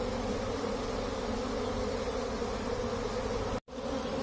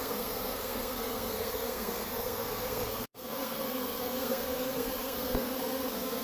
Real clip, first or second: first